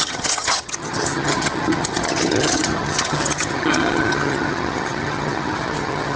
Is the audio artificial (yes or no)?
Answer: yes